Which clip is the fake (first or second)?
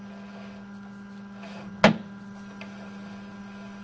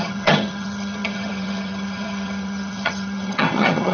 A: second